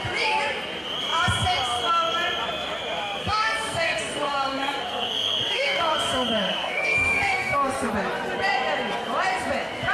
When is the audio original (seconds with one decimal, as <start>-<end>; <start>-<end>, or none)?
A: 0.0-3.2; 7.9-9.9